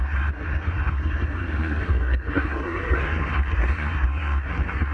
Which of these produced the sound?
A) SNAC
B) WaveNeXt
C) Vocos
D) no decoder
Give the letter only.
A